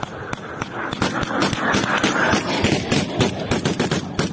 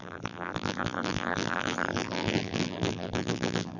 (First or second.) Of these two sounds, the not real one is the second